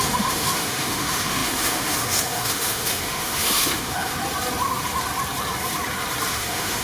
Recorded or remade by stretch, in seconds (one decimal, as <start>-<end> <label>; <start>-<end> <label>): 0.0-4.1 remade; 4.1-6.3 recorded; 6.3-6.8 remade